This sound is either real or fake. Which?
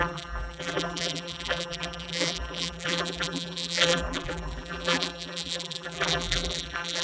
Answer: fake